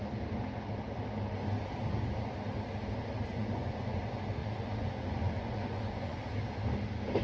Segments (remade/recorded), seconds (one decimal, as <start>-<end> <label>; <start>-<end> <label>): 0.0-3.3 recorded; 3.3-4.0 remade; 4.0-4.4 recorded; 4.4-6.2 remade; 6.2-7.2 recorded